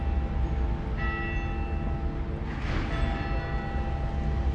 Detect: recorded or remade recorded